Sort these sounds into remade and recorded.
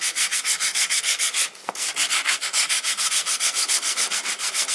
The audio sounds remade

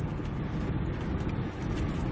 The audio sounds recorded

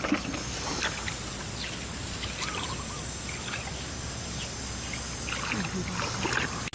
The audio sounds recorded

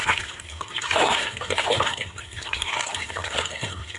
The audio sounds remade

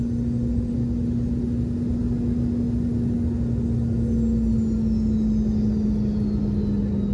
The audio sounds recorded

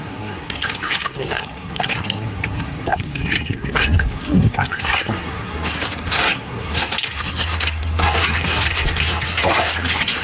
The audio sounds remade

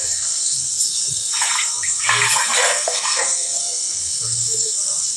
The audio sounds remade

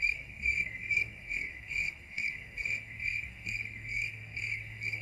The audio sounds remade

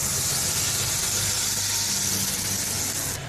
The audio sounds recorded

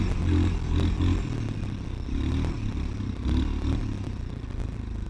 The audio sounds recorded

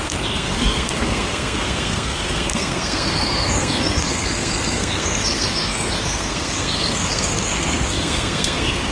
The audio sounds remade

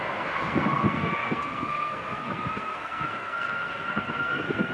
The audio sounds remade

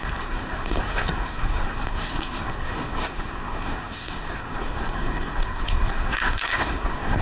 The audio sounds remade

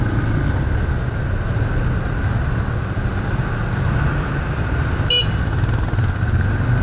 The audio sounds recorded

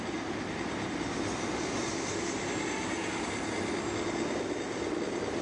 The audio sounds recorded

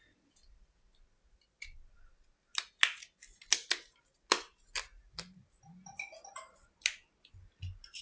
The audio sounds recorded